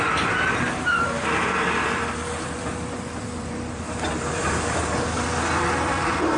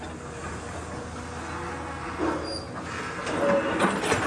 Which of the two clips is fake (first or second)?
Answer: first